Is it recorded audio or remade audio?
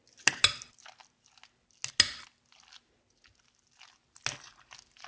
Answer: recorded